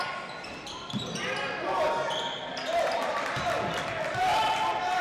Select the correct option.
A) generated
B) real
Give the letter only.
B